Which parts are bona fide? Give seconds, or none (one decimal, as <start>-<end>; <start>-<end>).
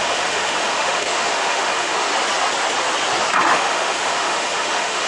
2.1-3.4